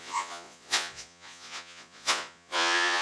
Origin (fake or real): fake